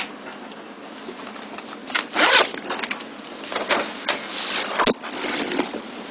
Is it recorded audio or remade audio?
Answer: recorded